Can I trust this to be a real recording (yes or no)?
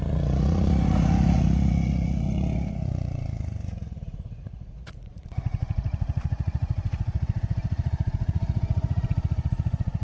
no